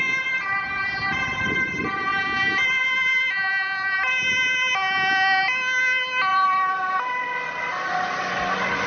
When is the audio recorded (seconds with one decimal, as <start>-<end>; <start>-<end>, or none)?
0.0-6.3; 7.3-8.9